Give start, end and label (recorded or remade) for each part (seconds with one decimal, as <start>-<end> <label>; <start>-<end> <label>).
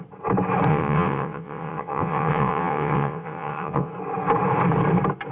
0.0-0.7 recorded; 0.7-3.9 remade; 3.9-5.3 recorded